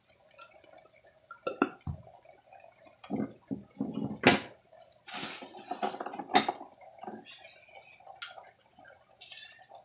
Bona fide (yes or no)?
yes